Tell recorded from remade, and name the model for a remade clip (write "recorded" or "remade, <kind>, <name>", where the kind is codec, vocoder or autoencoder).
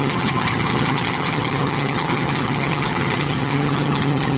remade, vocoder, HiFi-GAN